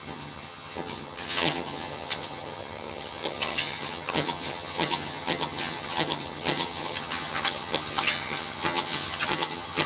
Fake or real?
fake